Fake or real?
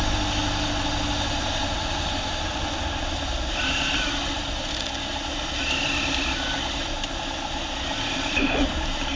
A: real